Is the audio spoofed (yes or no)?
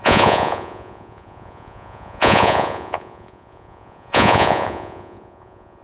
yes